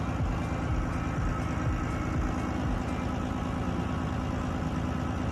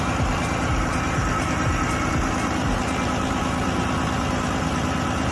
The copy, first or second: second